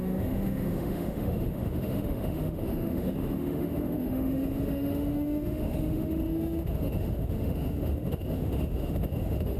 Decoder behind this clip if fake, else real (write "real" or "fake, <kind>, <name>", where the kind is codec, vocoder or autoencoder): fake, autoencoder, DAC-VAE